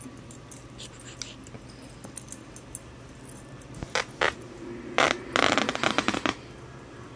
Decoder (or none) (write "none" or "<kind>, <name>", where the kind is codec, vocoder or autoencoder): none